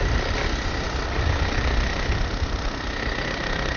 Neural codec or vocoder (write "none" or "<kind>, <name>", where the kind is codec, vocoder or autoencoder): none